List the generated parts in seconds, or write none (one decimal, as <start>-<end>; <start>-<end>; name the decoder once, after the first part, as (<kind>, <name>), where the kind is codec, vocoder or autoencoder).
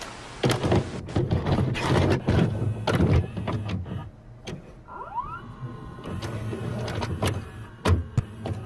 none